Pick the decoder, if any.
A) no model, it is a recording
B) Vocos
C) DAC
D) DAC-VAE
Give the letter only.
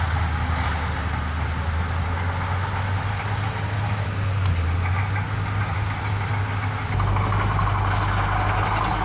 A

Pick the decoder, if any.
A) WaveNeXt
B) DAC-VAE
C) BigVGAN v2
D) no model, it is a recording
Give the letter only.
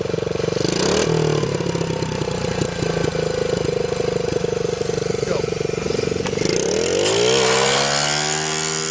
D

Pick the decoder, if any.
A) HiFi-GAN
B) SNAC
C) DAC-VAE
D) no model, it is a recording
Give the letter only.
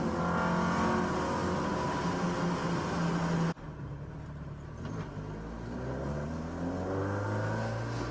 D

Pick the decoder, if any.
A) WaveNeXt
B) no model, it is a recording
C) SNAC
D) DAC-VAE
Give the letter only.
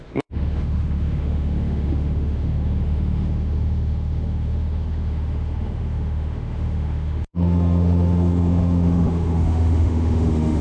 D